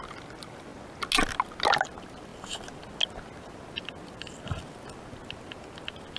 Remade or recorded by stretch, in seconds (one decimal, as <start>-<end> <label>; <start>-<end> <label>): 0.0-6.2 recorded